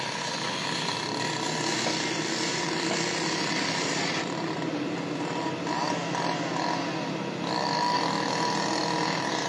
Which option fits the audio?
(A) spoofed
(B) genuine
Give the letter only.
B